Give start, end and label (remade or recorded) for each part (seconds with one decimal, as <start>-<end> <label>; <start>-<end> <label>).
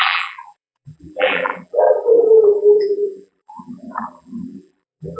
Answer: 0.0-5.2 remade